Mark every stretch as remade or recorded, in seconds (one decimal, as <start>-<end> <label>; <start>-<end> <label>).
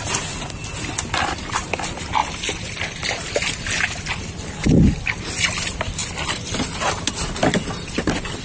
0.0-8.4 recorded